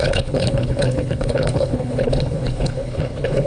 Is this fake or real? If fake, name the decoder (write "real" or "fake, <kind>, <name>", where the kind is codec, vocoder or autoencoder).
fake, codec, HILCodec